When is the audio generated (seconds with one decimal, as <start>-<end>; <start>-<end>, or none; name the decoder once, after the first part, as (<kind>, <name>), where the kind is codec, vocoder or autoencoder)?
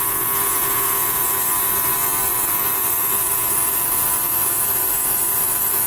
none